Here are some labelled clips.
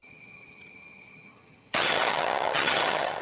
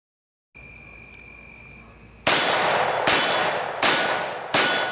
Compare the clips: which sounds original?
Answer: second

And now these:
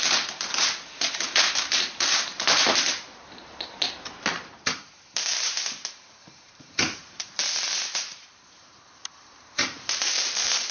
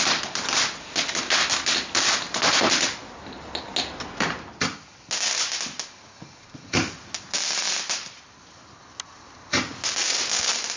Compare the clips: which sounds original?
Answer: second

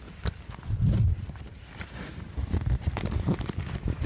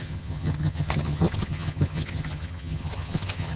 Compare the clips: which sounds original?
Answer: first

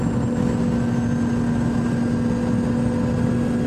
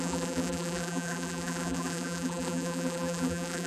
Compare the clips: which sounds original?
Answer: first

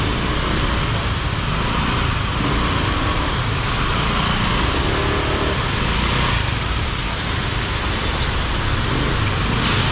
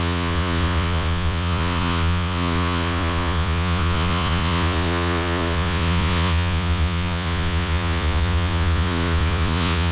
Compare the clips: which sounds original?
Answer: first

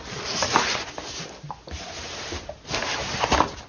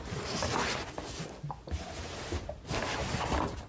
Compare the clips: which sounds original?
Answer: second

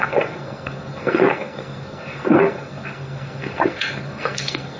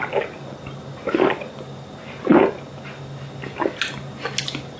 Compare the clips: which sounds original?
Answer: second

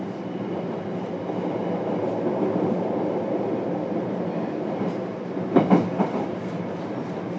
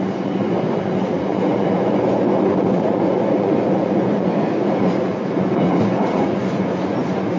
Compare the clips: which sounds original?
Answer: first